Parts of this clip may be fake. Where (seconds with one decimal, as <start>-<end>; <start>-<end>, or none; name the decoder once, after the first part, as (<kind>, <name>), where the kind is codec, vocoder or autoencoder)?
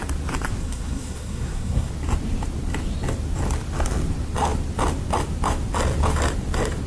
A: 0.6-1.9 (codec, SNAC)